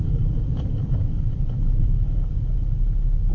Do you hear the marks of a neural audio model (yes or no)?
yes